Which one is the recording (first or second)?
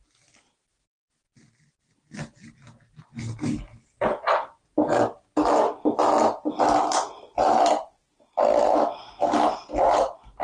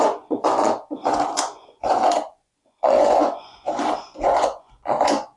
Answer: first